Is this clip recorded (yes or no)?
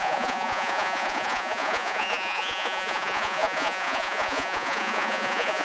no